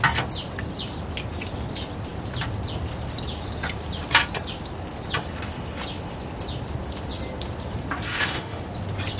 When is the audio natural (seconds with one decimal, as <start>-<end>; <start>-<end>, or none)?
0.0-8.1; 8.6-9.2